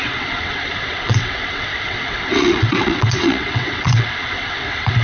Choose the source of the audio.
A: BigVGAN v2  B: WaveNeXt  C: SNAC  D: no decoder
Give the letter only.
B